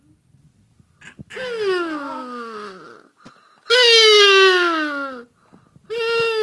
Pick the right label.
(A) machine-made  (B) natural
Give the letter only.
B